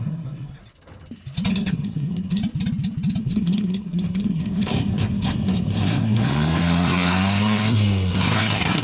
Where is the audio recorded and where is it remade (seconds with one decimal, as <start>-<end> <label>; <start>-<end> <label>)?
0.0-0.6 remade; 0.6-1.5 recorded; 1.5-2.4 remade; 2.4-3.2 recorded; 3.2-8.8 remade